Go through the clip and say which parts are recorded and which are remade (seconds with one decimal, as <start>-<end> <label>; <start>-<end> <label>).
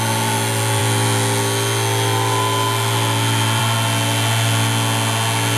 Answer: 0.0-5.6 recorded